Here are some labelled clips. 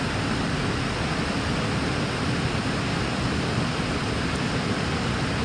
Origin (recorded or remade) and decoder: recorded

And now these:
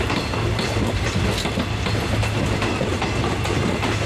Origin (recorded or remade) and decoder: recorded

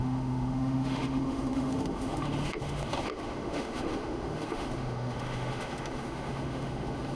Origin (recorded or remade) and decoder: remade, autoencoder, DAC-VAE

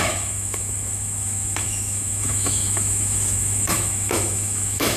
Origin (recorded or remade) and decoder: remade, autoencoder, DAC-VAE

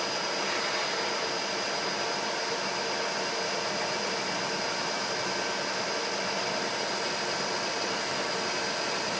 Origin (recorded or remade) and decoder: recorded